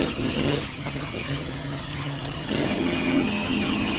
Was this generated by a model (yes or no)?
yes